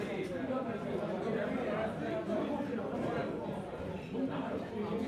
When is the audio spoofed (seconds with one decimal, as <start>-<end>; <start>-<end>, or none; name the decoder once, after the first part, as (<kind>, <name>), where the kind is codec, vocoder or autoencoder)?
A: 0.0-3.2 (vocoder, BigVGAN v2); 4.5-5.1